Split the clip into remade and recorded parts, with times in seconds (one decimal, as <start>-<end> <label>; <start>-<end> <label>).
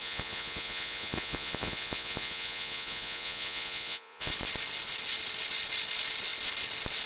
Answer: 0.0-4.3 remade; 4.3-7.1 recorded